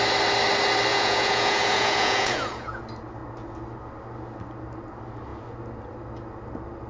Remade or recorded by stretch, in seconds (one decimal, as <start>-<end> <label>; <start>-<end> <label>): 0.0-0.9 recorded; 0.9-2.8 remade; 2.8-6.9 recorded